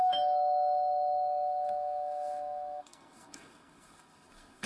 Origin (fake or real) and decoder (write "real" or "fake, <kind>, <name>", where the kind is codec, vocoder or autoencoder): fake, codec, SNAC